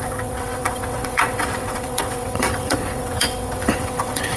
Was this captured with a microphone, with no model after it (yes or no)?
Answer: no